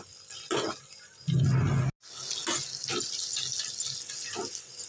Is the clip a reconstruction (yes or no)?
no